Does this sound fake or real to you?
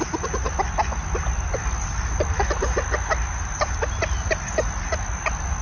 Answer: real